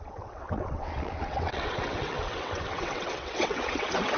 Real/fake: fake